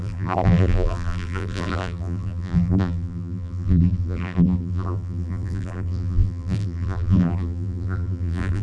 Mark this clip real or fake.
fake